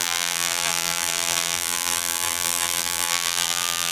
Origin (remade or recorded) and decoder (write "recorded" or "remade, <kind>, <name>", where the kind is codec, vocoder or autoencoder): remade, vocoder, BigVGAN v2